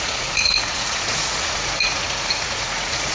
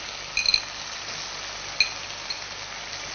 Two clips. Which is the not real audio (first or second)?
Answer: first